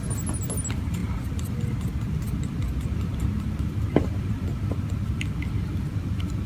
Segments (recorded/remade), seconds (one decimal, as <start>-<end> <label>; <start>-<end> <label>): 0.0-6.5 recorded